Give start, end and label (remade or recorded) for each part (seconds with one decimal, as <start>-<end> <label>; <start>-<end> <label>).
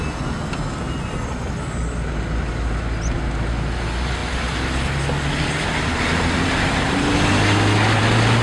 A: 0.0-8.4 recorded